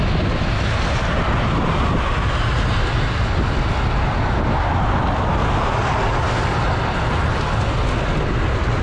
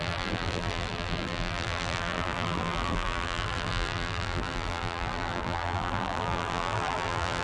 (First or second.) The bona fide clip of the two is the first